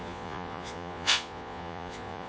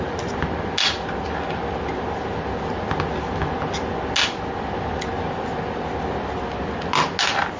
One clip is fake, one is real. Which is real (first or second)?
second